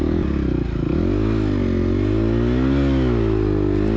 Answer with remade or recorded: recorded